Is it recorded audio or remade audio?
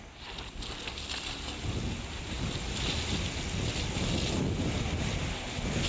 recorded